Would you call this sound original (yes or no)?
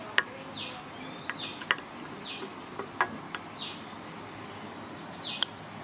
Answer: yes